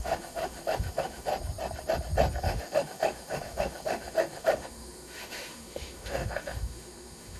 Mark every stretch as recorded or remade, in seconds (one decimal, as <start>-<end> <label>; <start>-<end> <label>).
0.0-1.3 remade; 1.3-2.4 recorded; 2.4-7.4 remade